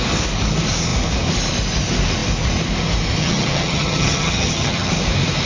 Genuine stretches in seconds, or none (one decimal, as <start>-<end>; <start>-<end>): 0.0-3.2; 4.9-5.5